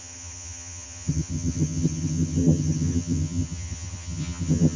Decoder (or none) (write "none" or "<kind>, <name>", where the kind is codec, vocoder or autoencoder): vocoder, HiFi-GAN